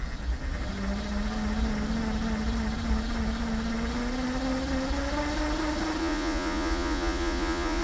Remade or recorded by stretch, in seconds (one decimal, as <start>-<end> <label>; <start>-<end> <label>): 0.0-6.0 recorded; 6.0-7.8 remade